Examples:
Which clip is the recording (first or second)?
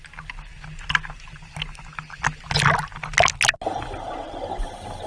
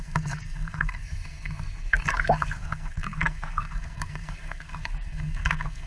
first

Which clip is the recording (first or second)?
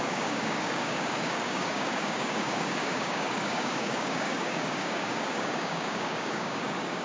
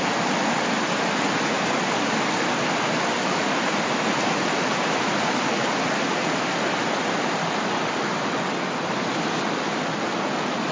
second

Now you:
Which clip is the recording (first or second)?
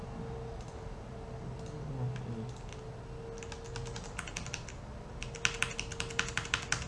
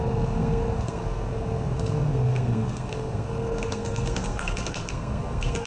first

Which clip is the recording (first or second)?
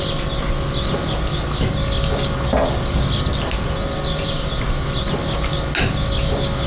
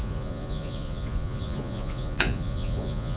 first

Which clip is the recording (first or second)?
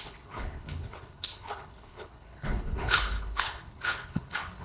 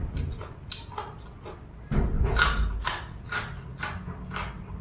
second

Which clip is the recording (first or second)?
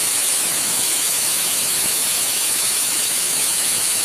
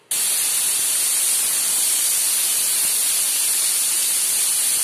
second